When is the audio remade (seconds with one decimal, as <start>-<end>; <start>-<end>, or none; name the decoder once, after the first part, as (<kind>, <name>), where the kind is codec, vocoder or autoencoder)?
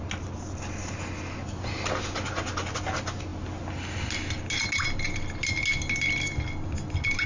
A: none